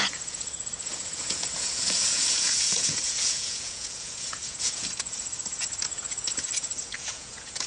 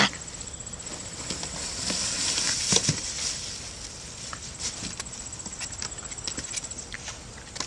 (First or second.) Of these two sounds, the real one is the second